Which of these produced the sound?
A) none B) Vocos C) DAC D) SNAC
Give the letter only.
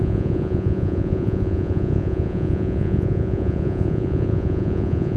B